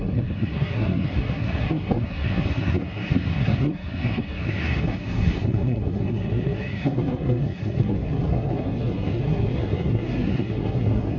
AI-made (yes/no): yes